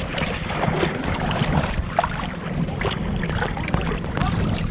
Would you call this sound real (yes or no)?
no